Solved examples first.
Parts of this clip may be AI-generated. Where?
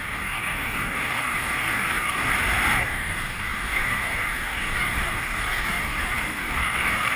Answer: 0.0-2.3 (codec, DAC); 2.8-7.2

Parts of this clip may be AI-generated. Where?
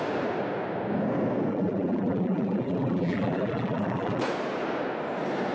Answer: 1.5-4.2 (vocoder, BigVGAN v2)